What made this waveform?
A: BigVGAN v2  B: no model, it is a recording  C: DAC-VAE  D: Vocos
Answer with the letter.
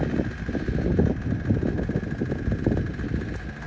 B